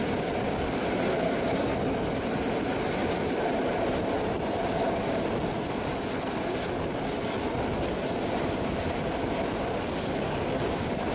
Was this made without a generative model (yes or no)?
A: yes